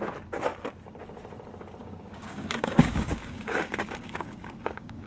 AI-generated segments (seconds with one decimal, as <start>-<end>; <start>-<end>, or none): 1.8-5.1